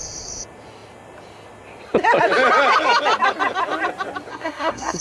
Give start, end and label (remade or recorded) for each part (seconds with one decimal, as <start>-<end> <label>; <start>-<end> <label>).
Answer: 0.0-4.3 recorded; 4.3-5.0 remade